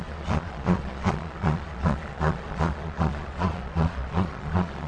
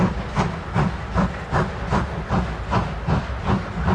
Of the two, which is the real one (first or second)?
second